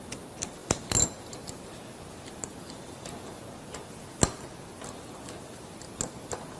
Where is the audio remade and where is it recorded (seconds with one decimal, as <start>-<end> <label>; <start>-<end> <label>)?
0.0-6.6 recorded